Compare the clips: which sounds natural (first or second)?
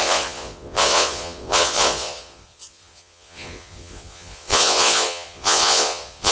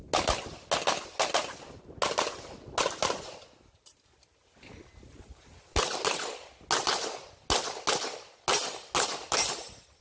second